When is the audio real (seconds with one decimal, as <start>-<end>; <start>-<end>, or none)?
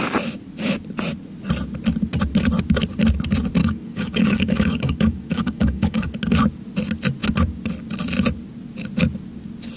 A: 0.0-3.6; 6.1-9.8